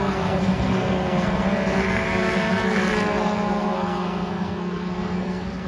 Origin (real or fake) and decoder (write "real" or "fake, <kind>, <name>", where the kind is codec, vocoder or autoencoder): fake, codec, SNAC